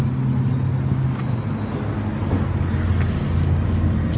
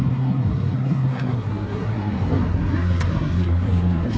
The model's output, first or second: second